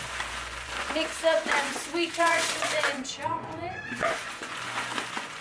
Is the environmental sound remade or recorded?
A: remade